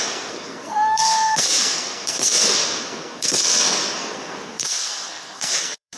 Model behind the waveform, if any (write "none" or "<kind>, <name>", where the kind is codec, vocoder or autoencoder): codec, SNAC